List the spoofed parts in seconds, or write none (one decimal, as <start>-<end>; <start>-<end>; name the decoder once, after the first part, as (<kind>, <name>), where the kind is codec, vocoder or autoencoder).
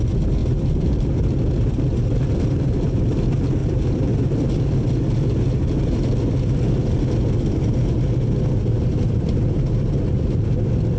0.4-0.9 (vocoder, BigVGAN v2); 3.6-4.2